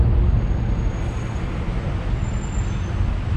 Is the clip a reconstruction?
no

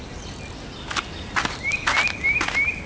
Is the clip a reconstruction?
no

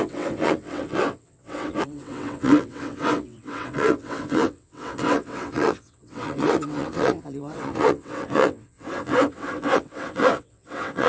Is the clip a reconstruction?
yes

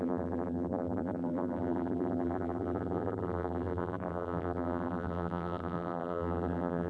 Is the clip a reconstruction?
yes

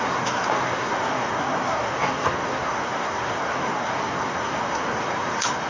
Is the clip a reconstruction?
yes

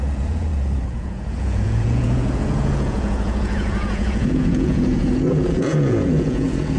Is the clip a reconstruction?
yes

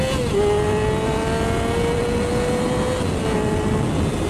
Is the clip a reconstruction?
no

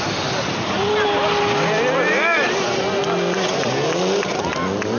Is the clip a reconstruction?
no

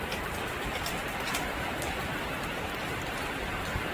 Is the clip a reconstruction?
no